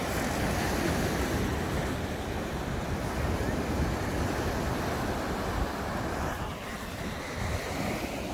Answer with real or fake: real